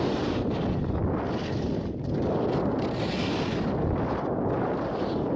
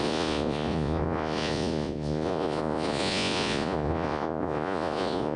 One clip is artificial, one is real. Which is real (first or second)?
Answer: first